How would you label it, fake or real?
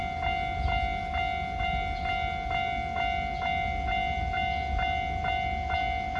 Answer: real